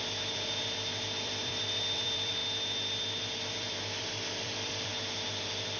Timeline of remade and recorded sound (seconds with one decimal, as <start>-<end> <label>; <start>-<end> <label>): 0.0-2.4 remade; 2.4-3.4 recorded; 3.4-4.9 remade; 4.9-5.8 recorded